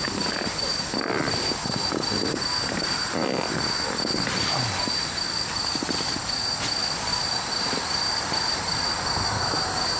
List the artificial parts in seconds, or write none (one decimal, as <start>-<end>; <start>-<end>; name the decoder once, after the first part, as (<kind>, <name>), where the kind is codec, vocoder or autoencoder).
0.7-1.5 (vocoder, BigVGAN v2)